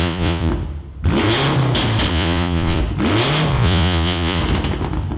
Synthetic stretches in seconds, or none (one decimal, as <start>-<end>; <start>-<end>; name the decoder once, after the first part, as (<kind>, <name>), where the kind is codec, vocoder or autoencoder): 0.0-0.5 (vocoder, Vocos); 2.1-2.8; 3.5-4.4